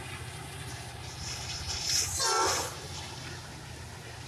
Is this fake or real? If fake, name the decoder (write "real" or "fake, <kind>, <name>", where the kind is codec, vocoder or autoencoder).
real